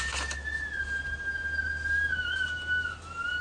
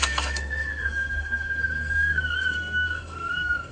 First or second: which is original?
first